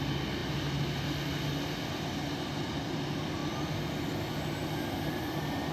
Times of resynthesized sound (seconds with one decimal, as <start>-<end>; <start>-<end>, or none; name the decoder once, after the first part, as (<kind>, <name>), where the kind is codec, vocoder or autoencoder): none